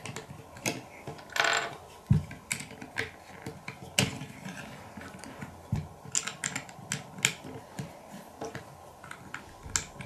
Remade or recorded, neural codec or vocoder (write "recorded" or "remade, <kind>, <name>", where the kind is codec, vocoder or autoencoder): recorded